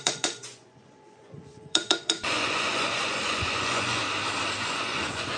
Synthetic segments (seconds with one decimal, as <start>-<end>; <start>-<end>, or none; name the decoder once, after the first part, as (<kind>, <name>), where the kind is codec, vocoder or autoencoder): 0.0-4.0 (vocoder, Vocos); 4.6-5.4